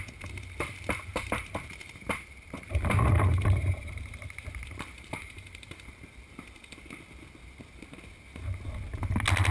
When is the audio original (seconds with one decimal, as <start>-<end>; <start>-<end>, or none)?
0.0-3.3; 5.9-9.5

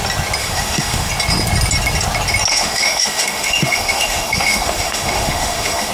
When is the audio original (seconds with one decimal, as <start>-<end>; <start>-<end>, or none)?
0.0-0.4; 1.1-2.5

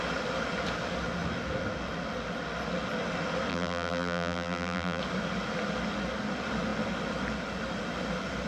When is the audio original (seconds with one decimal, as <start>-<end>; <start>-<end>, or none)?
0.0-3.5; 5.0-8.5

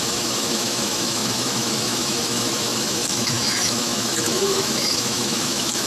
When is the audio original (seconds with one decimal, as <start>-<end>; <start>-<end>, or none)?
none

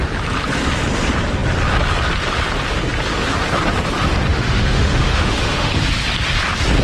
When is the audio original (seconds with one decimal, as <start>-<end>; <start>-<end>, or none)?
0.0-4.3; 5.7-6.8